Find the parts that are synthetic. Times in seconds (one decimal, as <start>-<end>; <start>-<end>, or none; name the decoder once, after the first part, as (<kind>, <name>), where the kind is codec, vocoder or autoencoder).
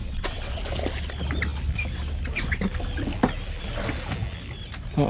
0.0-0.6 (vocoder, WaveNeXt)